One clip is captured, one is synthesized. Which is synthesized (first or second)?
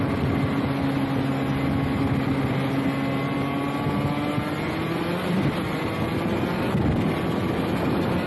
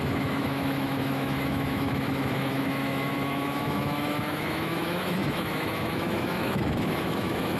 second